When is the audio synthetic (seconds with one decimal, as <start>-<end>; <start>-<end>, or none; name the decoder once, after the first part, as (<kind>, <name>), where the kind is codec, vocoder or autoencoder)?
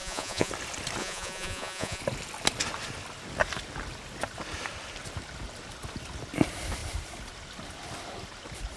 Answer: 0.0-0.5 (vocoder, Vocos); 1.0-2.0